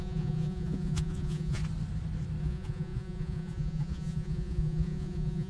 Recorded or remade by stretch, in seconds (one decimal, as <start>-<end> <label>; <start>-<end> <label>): 0.0-1.6 remade; 1.6-2.4 recorded; 2.4-5.5 remade

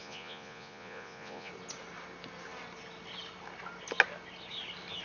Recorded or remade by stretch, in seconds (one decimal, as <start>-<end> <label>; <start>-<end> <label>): 0.0-1.5 remade; 1.5-5.0 recorded

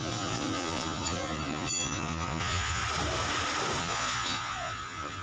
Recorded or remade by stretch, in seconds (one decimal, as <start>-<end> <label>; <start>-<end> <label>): 0.0-2.8 remade; 2.8-3.8 recorded; 3.8-5.2 remade

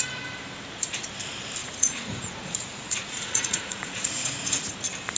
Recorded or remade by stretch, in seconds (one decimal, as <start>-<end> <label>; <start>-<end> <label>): 0.0-1.6 recorded; 1.6-4.7 remade; 4.7-5.2 recorded

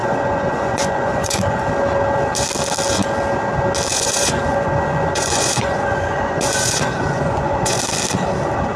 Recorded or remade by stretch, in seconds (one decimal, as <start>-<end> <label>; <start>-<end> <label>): 0.0-1.7 remade; 1.7-3.9 recorded; 3.9-7.8 remade; 7.8-8.8 recorded

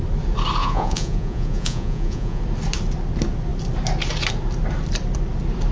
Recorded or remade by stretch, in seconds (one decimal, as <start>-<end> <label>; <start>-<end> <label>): 0.0-0.6 recorded; 0.6-2.4 remade; 2.4-5.7 recorded